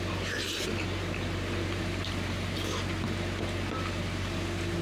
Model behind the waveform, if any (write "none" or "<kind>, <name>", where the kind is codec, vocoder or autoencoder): none